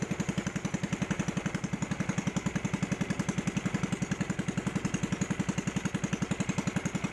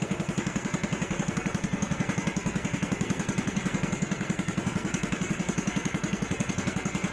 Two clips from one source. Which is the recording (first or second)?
first